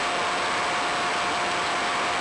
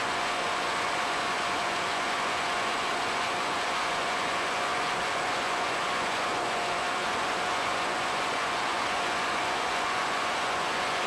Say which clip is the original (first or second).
first